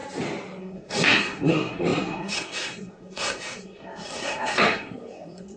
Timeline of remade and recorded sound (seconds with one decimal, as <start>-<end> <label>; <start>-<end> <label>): 0.0-0.6 recorded; 0.6-5.6 remade

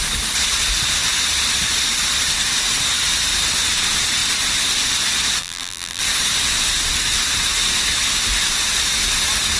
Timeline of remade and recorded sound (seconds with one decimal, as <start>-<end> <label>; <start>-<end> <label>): 0.0-5.4 recorded; 5.4-6.0 remade; 6.0-9.6 recorded

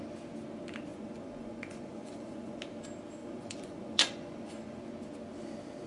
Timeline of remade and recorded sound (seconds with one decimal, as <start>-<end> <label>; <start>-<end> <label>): 0.0-0.9 recorded; 0.9-2.6 remade; 2.6-3.2 recorded; 3.2-4.8 remade; 4.8-5.9 recorded

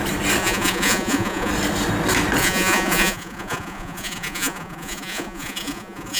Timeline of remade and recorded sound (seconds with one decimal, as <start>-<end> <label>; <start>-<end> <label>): 0.0-0.4 recorded; 0.4-1.5 remade; 1.5-2.4 recorded; 2.4-6.2 remade